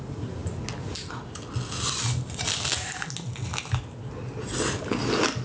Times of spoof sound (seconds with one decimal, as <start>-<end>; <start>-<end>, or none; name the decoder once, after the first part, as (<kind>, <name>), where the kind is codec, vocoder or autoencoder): none